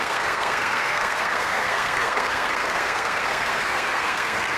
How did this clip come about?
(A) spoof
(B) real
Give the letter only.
A